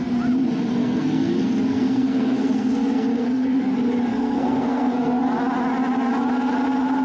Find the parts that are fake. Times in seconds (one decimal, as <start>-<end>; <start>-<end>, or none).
0.8-3.6; 4.1-5.2